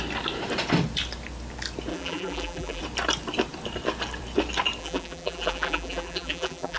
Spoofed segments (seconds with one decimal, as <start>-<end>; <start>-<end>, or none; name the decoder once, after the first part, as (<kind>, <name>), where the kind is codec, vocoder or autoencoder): 1.9-2.8 (vocoder, BigVGAN v2); 4.8-6.8